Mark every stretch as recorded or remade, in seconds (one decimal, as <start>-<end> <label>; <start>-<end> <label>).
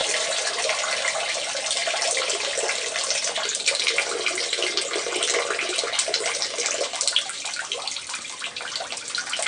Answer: 0.0-1.1 remade; 1.1-1.8 recorded; 1.8-6.9 remade; 6.9-9.5 recorded